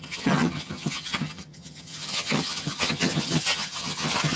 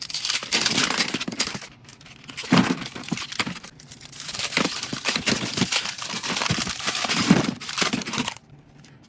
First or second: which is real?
second